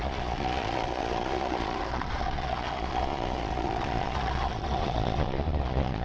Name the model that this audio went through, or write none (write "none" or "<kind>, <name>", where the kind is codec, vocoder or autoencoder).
vocoder, Vocos